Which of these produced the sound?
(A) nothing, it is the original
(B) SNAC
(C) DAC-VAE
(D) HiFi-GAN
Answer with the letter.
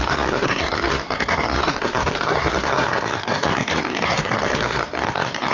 B